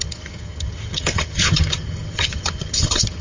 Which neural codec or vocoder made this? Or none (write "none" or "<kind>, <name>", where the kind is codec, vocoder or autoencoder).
vocoder, HiFi-GAN